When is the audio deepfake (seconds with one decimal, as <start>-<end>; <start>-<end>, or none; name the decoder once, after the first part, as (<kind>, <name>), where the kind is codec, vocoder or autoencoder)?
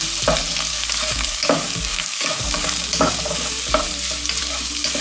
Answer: 0.7-3.7 (codec, DAC); 4.4-5.0